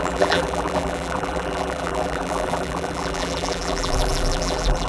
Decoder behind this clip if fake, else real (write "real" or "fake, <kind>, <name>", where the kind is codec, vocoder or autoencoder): fake, vocoder, BigVGAN v2